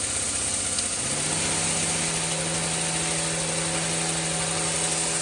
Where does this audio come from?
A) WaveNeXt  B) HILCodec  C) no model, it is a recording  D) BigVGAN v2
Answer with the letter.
C